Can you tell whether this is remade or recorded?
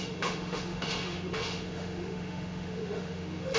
remade